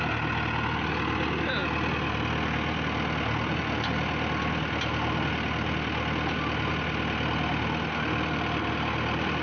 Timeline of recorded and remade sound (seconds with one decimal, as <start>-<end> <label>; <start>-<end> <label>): 0.0-9.4 recorded